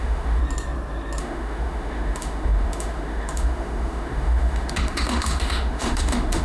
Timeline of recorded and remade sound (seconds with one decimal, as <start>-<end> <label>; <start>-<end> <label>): 0.0-0.4 remade; 0.4-1.2 recorded; 1.2-6.4 remade